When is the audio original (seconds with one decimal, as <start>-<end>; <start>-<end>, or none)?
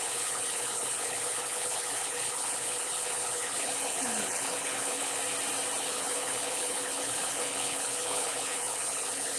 5.2-5.8